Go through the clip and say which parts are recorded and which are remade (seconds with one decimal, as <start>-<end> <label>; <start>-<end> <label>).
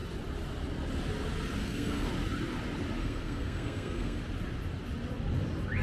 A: 0.0-1.6 recorded; 1.6-2.1 remade; 2.1-3.0 recorded; 3.0-4.2 remade; 4.2-5.8 recorded